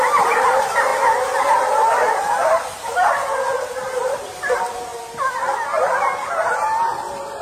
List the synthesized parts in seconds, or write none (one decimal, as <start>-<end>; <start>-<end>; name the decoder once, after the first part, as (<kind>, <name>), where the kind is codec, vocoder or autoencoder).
0.0-0.9 (vocoder, BigVGAN v2); 2.9-4.9